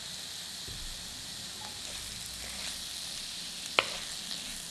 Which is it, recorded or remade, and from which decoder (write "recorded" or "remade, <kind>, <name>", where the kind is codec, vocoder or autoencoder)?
recorded